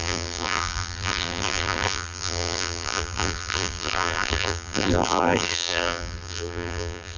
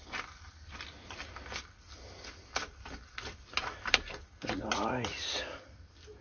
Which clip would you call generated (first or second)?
first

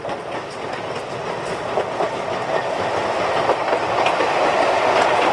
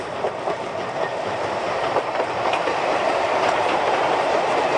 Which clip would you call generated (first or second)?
second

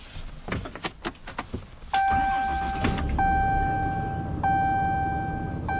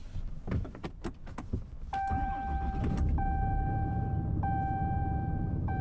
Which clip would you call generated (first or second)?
second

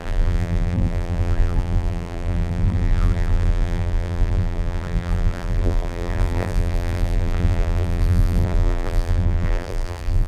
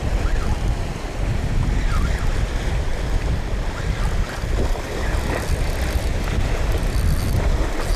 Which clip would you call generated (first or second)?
first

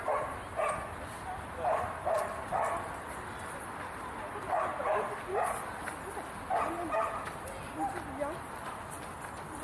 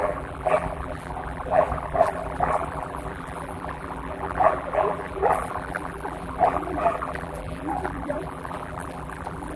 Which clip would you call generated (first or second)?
second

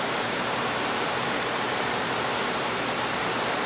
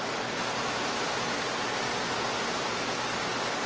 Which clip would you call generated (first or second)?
first